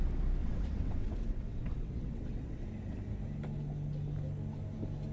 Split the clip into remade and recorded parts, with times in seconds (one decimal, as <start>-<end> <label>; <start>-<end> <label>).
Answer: 0.0-0.4 recorded; 0.4-2.7 remade; 2.7-5.1 recorded